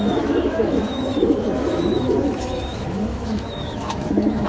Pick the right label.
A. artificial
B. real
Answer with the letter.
A